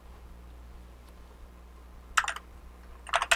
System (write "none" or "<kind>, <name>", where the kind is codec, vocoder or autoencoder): none